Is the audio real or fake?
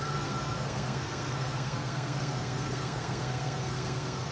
fake